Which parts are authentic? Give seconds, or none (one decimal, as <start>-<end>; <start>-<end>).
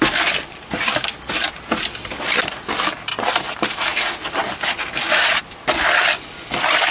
0.0-6.9